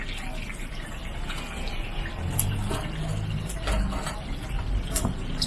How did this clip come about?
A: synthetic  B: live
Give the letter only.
B